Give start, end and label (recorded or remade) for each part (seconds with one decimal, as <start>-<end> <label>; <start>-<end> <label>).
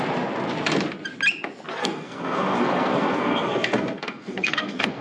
0.0-1.8 recorded; 1.8-5.0 remade